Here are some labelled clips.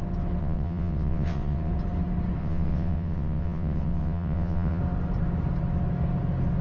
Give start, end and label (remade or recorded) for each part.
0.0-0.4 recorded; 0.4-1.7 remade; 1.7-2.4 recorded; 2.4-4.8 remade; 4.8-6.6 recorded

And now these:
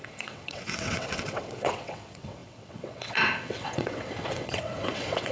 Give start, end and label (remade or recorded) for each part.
0.0-5.3 remade

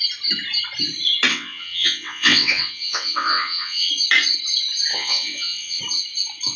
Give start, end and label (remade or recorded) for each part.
0.0-1.3 recorded; 1.3-3.9 remade; 3.9-4.9 recorded; 4.9-5.8 remade; 5.8-6.6 recorded